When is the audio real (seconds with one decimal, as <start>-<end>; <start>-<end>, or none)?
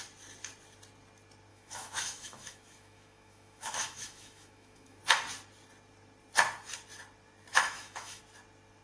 0.0-1.5; 5.0-7.5; 8.2-8.8